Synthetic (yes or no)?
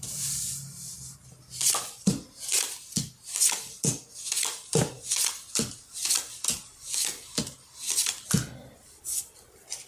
no